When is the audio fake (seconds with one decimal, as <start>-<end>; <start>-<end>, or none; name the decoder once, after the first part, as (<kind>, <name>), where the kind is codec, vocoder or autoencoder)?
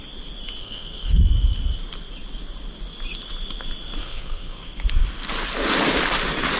0.6-1.2 (codec, SNAC); 4.0-4.7